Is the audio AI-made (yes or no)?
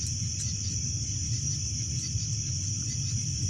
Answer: no